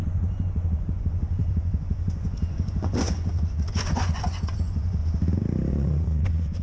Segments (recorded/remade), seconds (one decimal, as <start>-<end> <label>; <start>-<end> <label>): 0.0-5.0 remade; 5.0-5.7 recorded; 5.7-6.6 remade

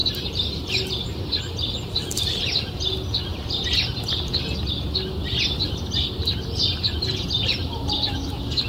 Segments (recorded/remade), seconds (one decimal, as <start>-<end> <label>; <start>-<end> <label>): 0.0-0.7 remade; 0.7-8.7 recorded